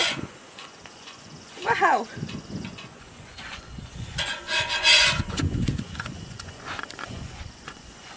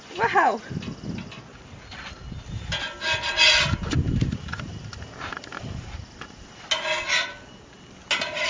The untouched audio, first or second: second